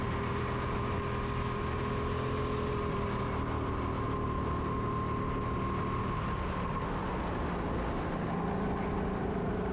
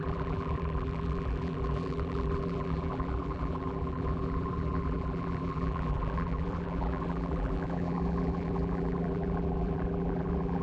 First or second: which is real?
first